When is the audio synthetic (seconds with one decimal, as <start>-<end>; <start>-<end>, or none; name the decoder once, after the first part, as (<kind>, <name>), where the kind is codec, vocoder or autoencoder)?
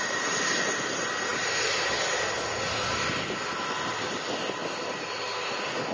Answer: none